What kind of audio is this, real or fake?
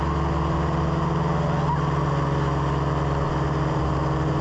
real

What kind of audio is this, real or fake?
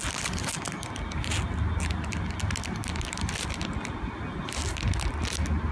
real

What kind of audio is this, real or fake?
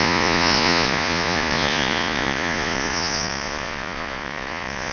fake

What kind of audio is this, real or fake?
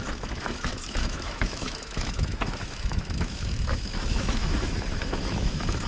fake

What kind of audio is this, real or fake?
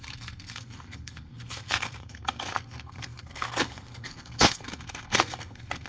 fake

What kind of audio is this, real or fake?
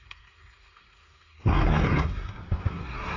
fake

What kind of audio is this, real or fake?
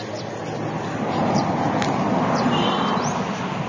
real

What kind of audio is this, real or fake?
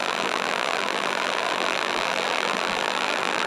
fake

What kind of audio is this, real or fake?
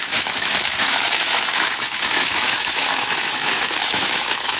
fake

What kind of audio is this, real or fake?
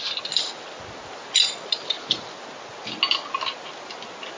real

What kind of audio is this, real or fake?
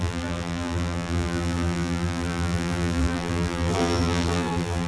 fake